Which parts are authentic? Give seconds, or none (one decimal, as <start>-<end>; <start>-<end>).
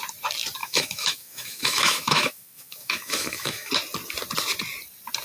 0.0-0.6; 3.7-5.2